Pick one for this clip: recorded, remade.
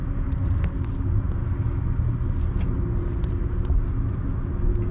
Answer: recorded